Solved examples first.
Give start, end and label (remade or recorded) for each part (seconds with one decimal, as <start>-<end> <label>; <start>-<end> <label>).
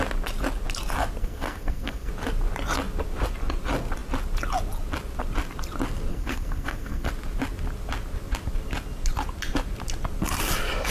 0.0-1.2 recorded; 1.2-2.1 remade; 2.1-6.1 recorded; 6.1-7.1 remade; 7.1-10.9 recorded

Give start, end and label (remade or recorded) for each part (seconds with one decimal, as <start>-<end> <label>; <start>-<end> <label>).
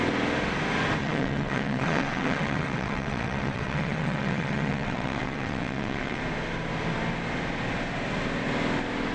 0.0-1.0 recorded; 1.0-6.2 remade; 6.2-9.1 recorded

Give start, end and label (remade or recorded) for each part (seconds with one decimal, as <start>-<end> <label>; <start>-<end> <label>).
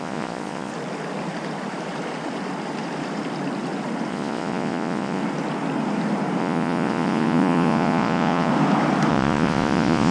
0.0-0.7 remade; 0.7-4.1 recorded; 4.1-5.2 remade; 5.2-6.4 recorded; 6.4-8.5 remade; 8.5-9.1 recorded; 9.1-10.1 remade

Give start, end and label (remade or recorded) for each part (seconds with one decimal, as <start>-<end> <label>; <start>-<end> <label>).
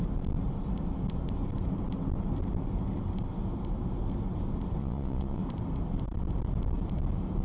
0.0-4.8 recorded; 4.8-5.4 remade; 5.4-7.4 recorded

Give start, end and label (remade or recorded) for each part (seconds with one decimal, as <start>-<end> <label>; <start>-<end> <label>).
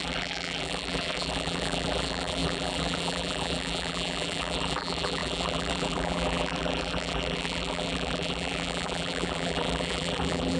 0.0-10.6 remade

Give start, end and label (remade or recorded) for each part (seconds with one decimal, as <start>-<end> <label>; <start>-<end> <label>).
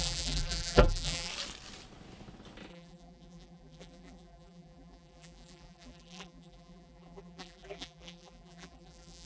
0.0-1.3 remade; 1.3-2.7 recorded; 2.7-9.3 remade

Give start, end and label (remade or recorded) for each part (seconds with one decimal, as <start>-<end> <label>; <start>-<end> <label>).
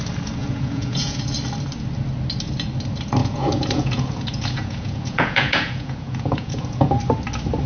0.0-0.4 recorded; 0.4-1.2 remade; 1.2-3.2 recorded; 3.2-7.0 remade; 7.0-7.7 recorded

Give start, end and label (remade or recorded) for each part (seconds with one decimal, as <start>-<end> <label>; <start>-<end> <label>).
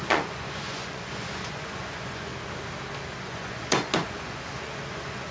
0.0-2.3 remade; 2.3-3.2 recorded; 3.2-5.3 remade